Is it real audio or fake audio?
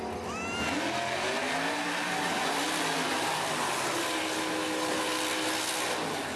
real